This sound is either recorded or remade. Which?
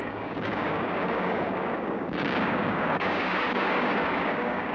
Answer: remade